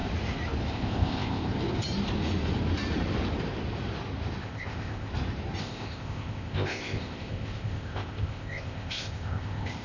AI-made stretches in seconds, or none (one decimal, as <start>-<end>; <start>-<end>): 0.7-1.5; 4.4-5.1; 5.6-9.8